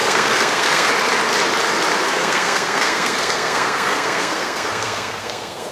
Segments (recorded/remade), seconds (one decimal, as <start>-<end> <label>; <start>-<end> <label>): 0.0-0.9 remade; 0.9-2.0 recorded; 2.0-5.7 remade

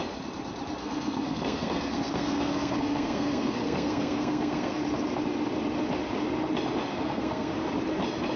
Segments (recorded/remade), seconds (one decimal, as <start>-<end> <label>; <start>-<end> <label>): 0.0-0.8 recorded; 0.8-4.8 remade; 4.8-6.9 recorded; 6.9-7.5 remade; 7.5-8.4 recorded

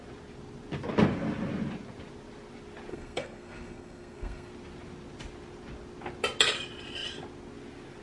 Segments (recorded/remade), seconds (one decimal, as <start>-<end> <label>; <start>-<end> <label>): 0.0-2.9 recorded; 2.9-4.5 remade; 4.5-8.0 recorded

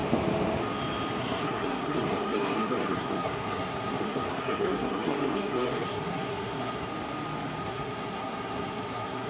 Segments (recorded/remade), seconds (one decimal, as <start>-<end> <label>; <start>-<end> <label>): 0.0-1.2 recorded; 1.2-6.9 remade; 6.9-7.6 recorded; 7.6-9.3 remade

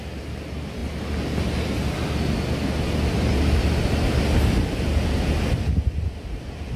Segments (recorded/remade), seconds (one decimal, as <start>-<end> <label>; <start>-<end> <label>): 0.0-6.8 recorded